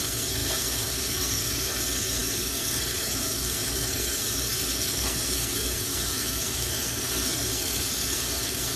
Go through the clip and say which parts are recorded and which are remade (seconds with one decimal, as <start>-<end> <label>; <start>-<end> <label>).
0.0-8.8 remade